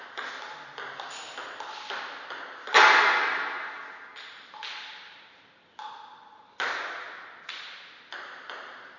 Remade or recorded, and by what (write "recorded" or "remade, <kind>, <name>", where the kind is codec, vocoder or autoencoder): recorded